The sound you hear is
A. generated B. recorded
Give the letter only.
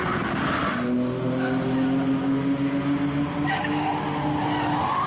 B